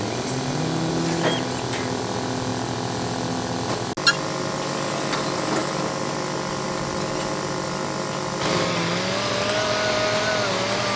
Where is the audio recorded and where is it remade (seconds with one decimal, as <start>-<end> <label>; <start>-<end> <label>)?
0.0-11.0 recorded